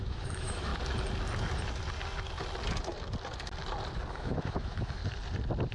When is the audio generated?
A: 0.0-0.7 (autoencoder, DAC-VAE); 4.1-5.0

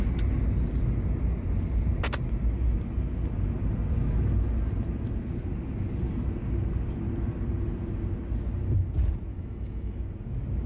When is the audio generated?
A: 9.3-10.0 (autoencoder, DAC-VAE)

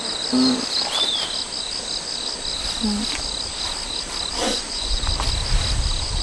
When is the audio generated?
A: 4.4-5.1 (vocoder, Vocos)

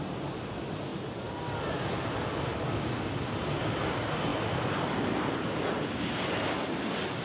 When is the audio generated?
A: none

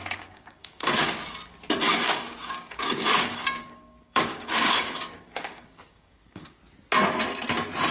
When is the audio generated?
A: 0.0-1.0 (codec, DAC); 1.9-6.6